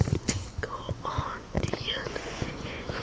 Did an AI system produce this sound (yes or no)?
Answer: yes